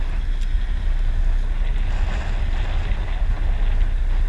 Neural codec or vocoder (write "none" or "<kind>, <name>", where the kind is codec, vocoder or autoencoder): none